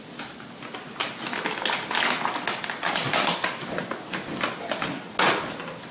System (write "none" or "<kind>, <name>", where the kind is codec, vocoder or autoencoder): none